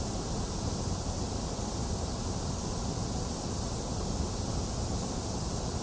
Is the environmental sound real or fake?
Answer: real